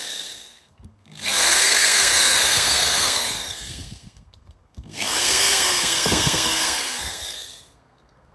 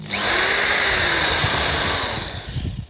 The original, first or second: second